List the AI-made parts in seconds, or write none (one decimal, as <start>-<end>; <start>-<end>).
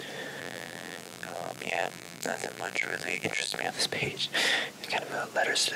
0.4-3.7